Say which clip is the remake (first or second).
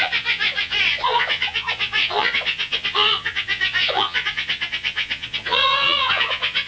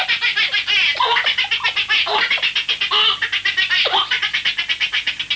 first